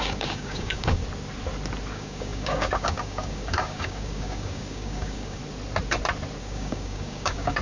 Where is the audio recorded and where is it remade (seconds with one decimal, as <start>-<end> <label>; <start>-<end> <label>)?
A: 0.0-1.0 remade; 1.0-1.9 recorded; 1.9-5.4 remade; 5.4-6.4 recorded; 6.4-7.6 remade